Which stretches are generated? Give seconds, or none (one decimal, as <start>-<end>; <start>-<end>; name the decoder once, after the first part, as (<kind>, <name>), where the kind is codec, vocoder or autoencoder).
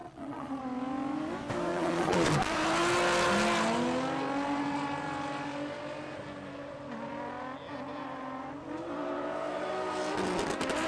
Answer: 0.0-0.6 (vocoder, Vocos); 1.7-2.3